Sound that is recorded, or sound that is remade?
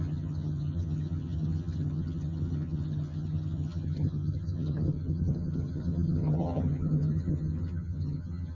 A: remade